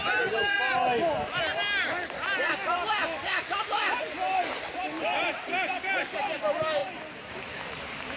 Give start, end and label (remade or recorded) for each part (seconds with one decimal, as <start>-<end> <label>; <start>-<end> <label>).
0.0-8.2 recorded